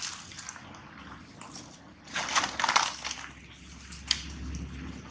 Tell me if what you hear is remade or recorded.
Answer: recorded